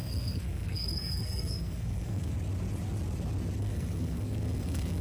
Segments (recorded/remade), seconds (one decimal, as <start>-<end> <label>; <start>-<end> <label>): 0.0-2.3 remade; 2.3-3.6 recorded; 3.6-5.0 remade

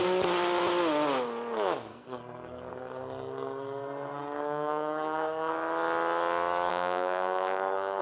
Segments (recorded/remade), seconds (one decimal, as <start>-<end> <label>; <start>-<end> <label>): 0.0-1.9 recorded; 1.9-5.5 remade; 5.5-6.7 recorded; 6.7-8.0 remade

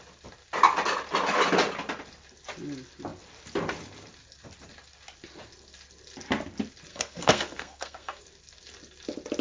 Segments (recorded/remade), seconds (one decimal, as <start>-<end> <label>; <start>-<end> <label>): 0.0-6.9 recorded; 6.9-8.2 remade; 8.2-9.4 recorded

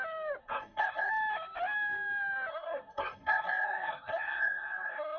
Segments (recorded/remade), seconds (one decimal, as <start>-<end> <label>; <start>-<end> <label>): 0.0-0.4 recorded; 0.4-1.1 remade; 1.1-2.5 recorded; 2.5-5.2 remade